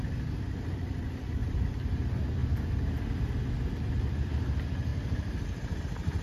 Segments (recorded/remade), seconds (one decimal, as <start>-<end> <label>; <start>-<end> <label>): 0.0-1.4 recorded; 1.4-2.0 remade; 2.0-2.4 recorded; 2.4-3.4 remade; 3.4-6.2 recorded